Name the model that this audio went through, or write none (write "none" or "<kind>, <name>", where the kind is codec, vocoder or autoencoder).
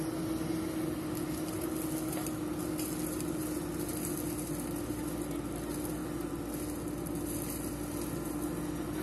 none